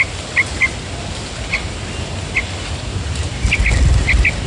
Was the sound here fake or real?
real